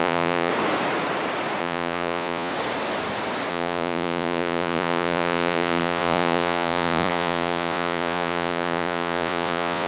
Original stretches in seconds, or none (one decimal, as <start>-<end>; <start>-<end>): 0.5-1.6; 2.5-3.5